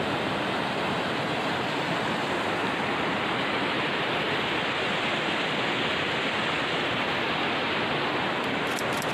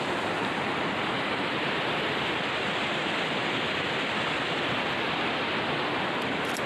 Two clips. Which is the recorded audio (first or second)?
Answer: first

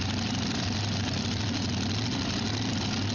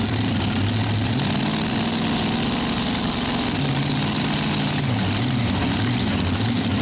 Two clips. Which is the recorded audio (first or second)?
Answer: first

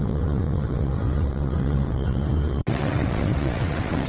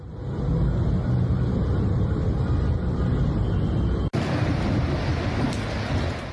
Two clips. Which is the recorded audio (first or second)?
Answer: second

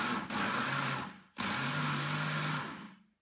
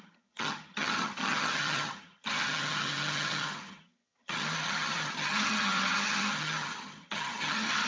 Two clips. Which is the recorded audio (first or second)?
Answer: first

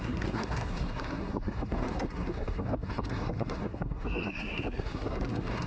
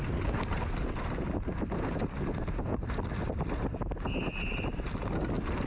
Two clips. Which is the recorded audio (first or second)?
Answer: second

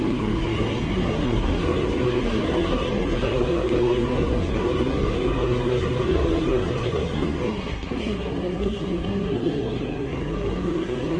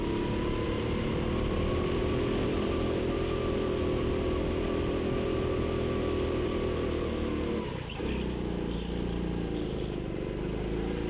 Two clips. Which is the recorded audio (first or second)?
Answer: second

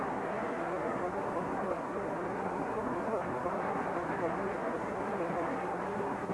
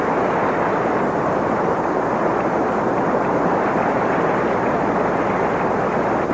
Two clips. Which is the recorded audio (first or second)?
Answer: second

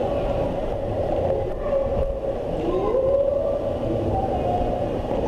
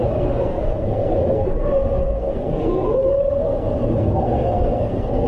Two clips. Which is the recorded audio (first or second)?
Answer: first